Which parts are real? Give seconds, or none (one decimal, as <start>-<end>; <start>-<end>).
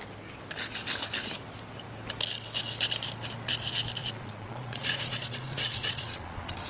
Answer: 0.0-4.0